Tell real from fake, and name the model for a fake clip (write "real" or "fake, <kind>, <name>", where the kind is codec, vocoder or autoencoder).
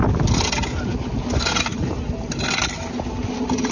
real